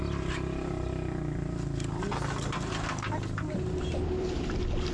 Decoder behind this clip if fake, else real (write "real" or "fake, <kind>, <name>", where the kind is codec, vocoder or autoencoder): real